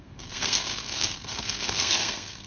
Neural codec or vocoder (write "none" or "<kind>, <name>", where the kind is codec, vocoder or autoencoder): codec, SNAC